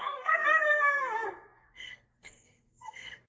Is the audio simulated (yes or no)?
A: yes